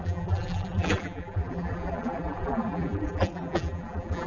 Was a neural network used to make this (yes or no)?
yes